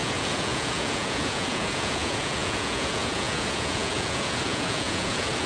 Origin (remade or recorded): remade